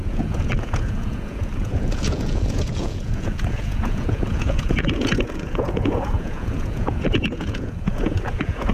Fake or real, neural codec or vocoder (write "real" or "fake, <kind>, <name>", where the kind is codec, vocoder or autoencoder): fake, vocoder, Vocos